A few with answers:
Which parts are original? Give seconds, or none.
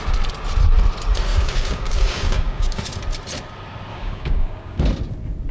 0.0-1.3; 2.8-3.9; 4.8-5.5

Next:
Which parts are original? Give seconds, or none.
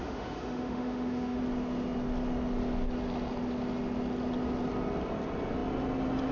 1.4-6.3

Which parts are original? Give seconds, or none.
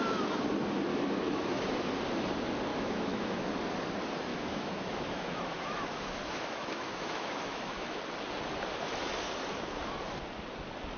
0.0-0.9; 1.7-2.7; 3.5-4.3; 8.0-11.0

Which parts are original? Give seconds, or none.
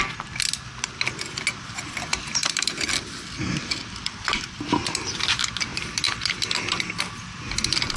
0.0-2.1; 4.4-5.7; 7.0-8.0